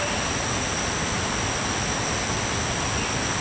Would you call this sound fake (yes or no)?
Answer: no